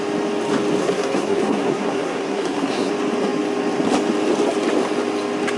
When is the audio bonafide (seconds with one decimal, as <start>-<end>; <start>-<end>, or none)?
0.0-0.8; 2.9-5.6